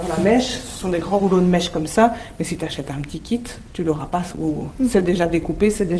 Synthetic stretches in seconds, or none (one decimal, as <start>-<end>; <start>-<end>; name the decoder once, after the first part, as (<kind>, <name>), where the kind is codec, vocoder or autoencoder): 0.5-1.2 (vocoder, WaveNeXt); 2.7-4.5; 5.0-6.0